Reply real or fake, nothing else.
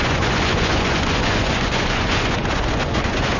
fake